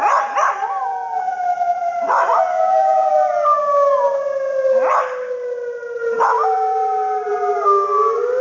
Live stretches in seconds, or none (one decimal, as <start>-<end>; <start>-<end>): 0.0-2.5; 3.1-8.4